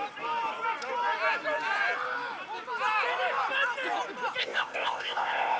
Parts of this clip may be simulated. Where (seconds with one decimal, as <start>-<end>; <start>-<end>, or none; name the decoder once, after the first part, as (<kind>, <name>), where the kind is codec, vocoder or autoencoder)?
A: 4.4-5.6 (codec, ZipCodec)